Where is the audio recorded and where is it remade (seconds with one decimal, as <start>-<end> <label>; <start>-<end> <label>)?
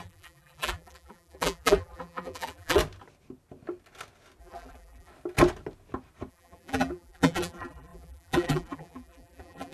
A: 0.0-2.8 remade; 2.8-4.4 recorded; 4.4-5.1 remade; 5.1-6.3 recorded; 6.3-9.7 remade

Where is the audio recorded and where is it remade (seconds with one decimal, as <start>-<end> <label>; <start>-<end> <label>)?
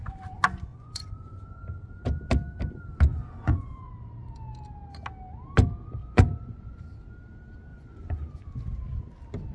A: 0.0-0.7 recorded; 0.7-1.6 remade; 1.6-3.1 recorded; 3.1-3.9 remade; 3.9-6.0 recorded; 6.0-6.8 remade; 6.8-7.7 recorded; 7.7-8.3 remade; 8.3-9.5 recorded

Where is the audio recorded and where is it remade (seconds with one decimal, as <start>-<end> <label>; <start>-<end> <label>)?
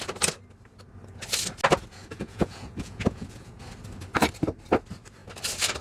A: 0.0-1.9 recorded; 1.9-3.6 remade; 3.6-5.8 recorded